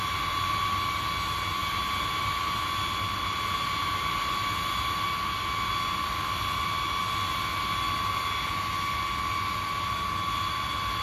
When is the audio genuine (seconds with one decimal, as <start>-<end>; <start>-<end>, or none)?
0.0-11.0